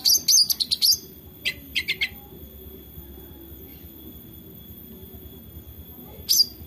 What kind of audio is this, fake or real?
real